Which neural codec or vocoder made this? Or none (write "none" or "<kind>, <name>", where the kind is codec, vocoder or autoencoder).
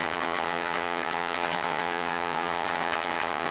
vocoder, HiFi-GAN